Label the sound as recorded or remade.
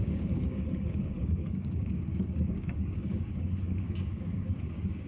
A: remade